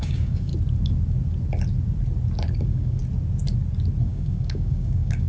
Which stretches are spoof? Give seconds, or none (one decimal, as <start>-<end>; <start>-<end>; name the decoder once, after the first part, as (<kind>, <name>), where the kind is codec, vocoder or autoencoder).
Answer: 0.0-0.5 (codec, DAC); 2.6-3.0; 4.0-5.3